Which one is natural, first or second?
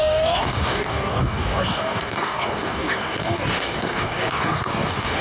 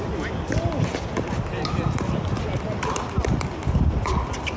second